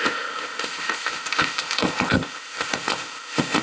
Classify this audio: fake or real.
fake